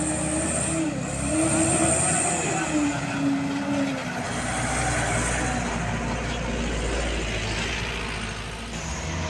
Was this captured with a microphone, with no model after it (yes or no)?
yes